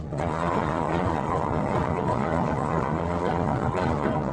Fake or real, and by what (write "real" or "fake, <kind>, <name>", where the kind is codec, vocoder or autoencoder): fake, vocoder, Vocos